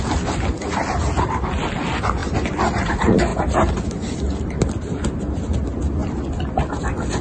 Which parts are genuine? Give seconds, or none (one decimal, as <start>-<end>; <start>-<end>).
0.0-7.2